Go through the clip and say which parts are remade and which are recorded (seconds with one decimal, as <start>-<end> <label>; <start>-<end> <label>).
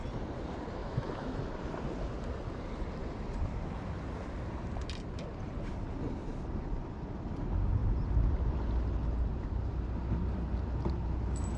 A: 0.0-0.8 recorded; 0.8-1.4 remade; 1.4-11.6 recorded